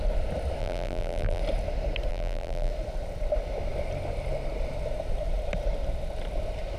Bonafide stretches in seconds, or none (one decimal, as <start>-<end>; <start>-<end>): 0.0-0.6; 1.4-2.1; 2.7-6.8

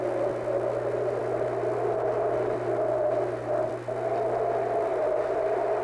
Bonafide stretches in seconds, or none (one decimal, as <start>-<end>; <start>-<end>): 0.0-1.2; 3.7-4.9

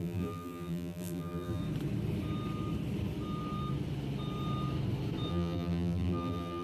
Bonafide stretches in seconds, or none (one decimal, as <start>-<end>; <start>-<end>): 1.6-5.3

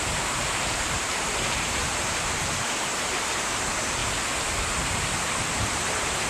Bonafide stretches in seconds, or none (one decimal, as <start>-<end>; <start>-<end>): 2.9-3.4; 4.0-4.9